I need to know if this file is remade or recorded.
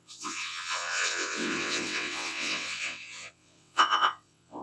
remade